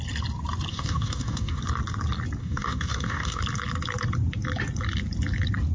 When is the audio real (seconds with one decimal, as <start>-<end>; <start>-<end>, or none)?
0.0-0.7; 1.6-2.4; 3.4-5.7

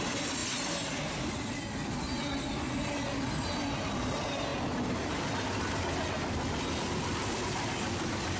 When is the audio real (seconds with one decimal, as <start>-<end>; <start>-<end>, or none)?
0.0-8.4

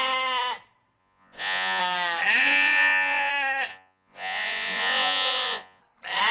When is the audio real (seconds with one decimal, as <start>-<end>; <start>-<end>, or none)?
0.0-1.0; 1.8-2.4; 3.3-3.7; 5.8-6.3